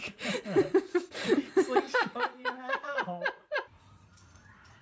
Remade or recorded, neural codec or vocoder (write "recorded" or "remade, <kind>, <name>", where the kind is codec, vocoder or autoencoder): remade, vocoder, Vocos